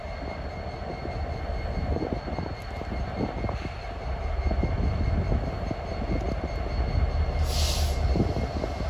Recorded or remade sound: recorded